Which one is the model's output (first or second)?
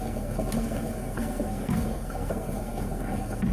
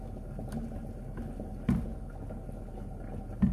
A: first